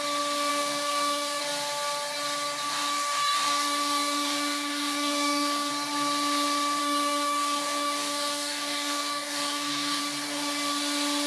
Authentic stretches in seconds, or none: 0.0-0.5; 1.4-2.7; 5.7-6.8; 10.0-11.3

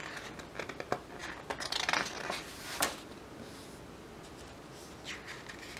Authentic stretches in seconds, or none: 0.0-5.8

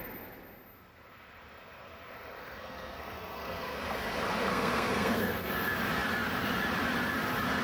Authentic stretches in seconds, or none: 0.0-2.4; 3.8-4.5; 5.5-7.6

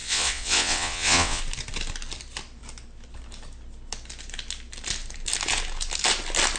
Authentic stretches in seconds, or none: 1.4-6.6

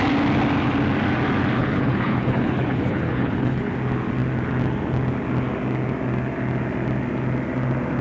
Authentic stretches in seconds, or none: 0.0-1.6; 3.7-8.0

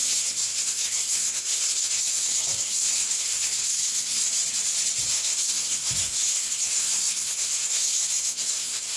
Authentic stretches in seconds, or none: 4.2-5.1

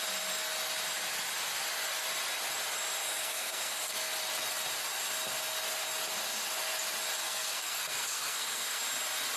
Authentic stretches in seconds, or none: 0.0-3.2; 4.1-7.2; 8.8-9.4

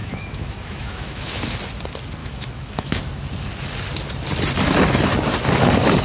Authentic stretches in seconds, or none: 1.4-2.2; 3.0-6.0